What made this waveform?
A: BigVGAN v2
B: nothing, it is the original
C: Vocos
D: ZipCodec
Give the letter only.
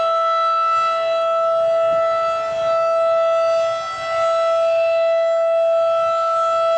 B